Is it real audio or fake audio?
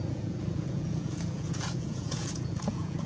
fake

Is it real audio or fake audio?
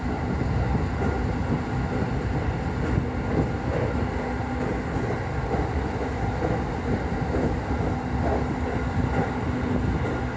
real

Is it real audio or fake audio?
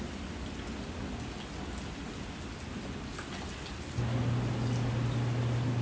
real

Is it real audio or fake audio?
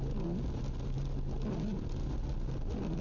real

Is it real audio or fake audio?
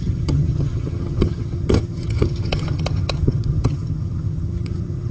fake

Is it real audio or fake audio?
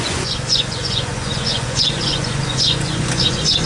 fake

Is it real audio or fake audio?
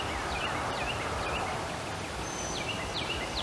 real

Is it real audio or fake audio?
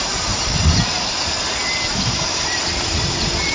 fake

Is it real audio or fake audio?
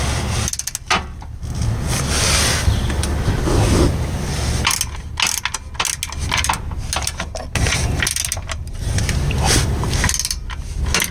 real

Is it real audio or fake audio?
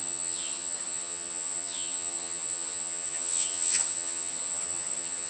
fake